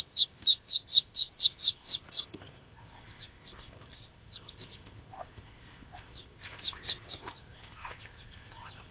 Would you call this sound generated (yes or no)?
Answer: yes